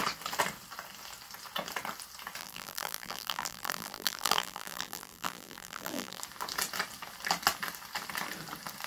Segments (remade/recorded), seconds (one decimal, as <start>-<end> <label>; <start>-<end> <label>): 0.0-2.4 recorded; 2.4-6.2 remade; 6.2-8.9 recorded